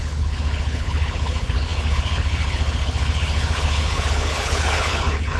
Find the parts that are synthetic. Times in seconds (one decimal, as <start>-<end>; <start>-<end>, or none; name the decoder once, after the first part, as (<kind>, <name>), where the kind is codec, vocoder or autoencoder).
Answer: 0.0-5.4 (codec, HILCodec)